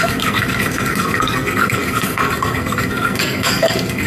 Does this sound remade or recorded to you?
remade